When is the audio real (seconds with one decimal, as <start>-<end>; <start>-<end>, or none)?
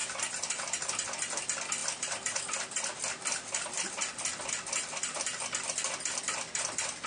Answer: 0.0-1.8; 3.9-7.1